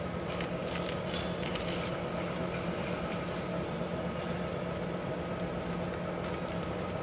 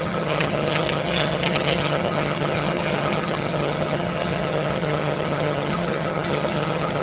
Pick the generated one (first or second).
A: second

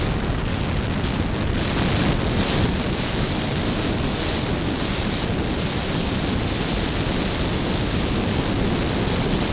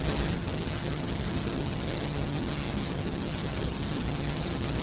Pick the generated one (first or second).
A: second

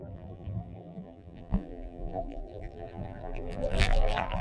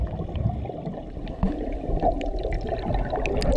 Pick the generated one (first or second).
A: first